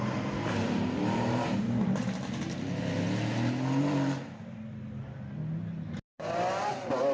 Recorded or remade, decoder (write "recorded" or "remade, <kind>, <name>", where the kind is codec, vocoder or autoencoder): recorded